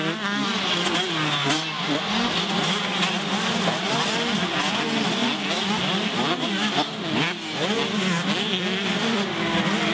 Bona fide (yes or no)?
yes